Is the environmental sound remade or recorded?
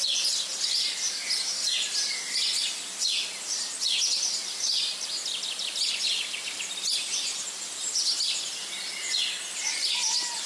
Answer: recorded